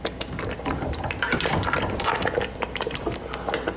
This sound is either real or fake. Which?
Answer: real